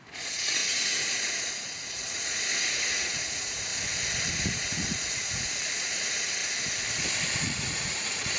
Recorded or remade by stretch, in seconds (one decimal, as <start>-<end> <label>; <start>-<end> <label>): 0.0-3.7 remade; 3.7-4.3 recorded; 4.3-6.4 remade; 6.4-7.4 recorded; 7.4-8.4 remade